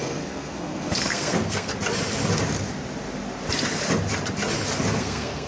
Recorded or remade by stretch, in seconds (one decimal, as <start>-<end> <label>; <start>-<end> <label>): 0.0-1.7 remade; 1.7-5.0 recorded; 5.0-5.5 remade